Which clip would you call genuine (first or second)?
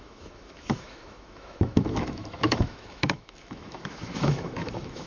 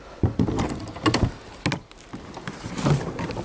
second